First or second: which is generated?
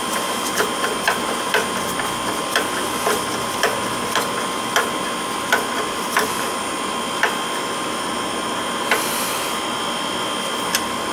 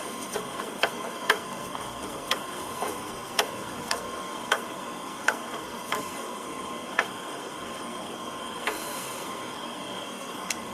second